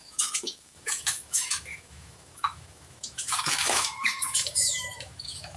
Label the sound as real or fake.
fake